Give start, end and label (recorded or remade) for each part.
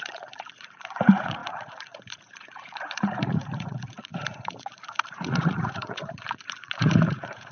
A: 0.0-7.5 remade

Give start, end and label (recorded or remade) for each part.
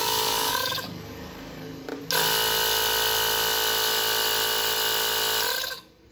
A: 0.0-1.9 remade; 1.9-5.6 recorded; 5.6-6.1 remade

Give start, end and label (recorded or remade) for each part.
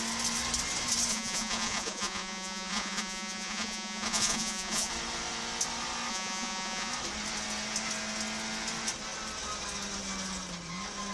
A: 0.0-1.1 recorded; 1.1-4.9 remade; 4.9-6.1 recorded; 6.1-6.9 remade; 6.9-11.1 recorded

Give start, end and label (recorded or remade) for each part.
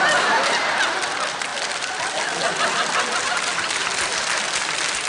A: 0.0-5.1 recorded